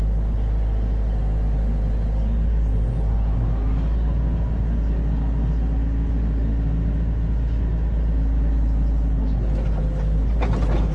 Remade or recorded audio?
recorded